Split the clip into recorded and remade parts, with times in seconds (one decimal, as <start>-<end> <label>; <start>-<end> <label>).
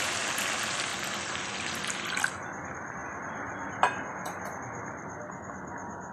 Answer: 0.0-6.1 recorded